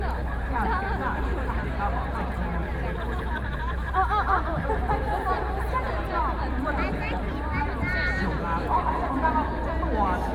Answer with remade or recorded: remade